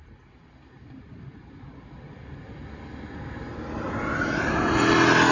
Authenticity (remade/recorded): recorded